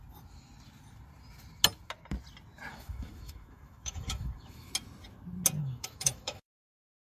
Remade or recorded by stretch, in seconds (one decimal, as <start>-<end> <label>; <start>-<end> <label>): 0.0-2.7 recorded; 2.7-4.7 remade; 4.7-5.6 recorded; 5.6-6.5 remade; 6.5-7.0 recorded